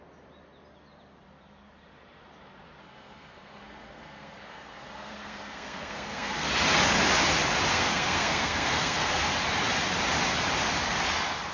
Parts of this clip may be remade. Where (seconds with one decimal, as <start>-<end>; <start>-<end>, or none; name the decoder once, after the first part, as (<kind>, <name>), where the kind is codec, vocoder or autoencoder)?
2.8-6.5 (codec, SNAC); 7.7-9.3